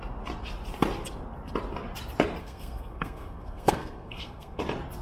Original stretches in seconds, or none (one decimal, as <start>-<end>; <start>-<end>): 0.0-2.4; 4.6-5.0